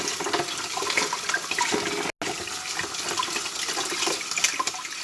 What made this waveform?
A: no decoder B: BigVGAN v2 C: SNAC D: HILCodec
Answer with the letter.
A